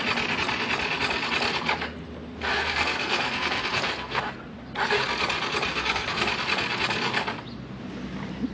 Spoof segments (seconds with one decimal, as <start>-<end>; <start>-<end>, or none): 2.5-4.2; 5.7-6.3